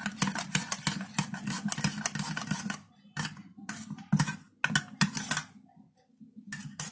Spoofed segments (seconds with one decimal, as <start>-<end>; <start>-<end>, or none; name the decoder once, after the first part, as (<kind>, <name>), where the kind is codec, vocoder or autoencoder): none